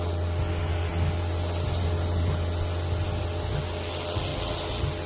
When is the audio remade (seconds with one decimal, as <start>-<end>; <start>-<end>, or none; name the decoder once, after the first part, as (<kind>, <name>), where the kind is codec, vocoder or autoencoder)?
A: none